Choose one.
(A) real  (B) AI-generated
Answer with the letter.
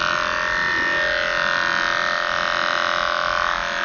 A